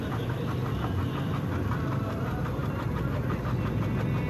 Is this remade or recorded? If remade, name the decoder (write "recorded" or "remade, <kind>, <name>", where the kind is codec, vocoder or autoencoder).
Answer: recorded